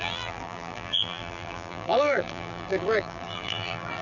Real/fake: fake